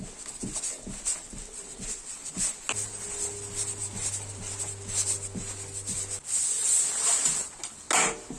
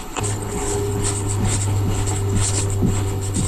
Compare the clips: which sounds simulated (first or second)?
second